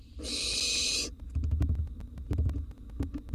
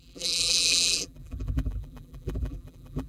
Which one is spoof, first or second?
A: second